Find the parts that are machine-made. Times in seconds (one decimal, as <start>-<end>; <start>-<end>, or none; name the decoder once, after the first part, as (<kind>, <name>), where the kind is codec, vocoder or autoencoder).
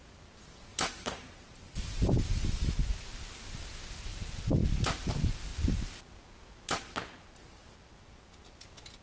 0.7-2.1 (vocoder, BigVGAN v2)